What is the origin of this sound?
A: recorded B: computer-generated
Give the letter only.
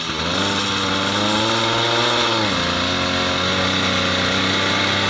A